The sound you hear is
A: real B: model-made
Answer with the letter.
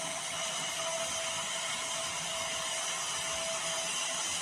A